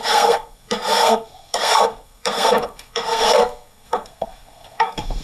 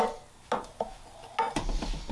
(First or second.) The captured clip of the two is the second